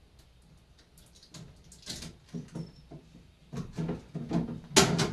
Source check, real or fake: real